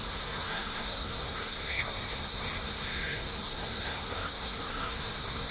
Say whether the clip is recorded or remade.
remade